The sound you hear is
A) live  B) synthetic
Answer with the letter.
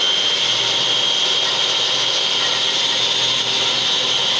A